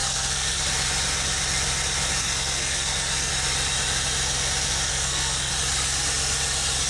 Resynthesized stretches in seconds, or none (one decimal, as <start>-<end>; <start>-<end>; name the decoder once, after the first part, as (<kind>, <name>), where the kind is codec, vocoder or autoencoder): 0.0-0.6 (codec, SNAC); 2.2-3.3; 4.9-5.5